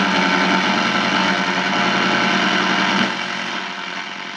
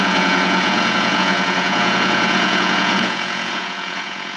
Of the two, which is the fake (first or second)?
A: second